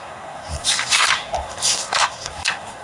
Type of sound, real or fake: fake